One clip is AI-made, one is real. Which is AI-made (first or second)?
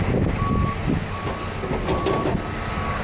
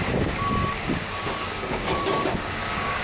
second